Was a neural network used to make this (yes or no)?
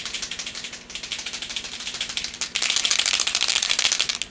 no